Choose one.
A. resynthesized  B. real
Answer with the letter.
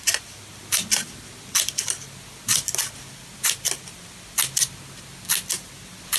B